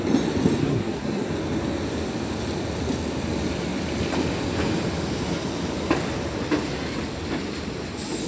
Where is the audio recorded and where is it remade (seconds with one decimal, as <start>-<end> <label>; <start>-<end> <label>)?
0.0-0.6 recorded; 0.6-1.3 remade; 1.3-8.3 recorded